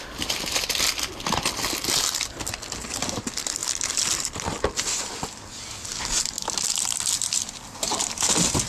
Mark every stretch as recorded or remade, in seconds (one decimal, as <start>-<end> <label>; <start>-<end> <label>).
0.0-8.7 recorded